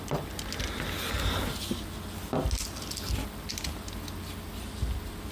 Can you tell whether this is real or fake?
real